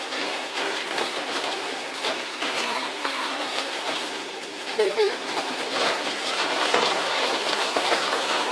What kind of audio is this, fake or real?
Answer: fake